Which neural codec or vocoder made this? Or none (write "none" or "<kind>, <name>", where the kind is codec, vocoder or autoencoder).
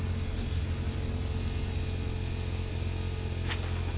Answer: none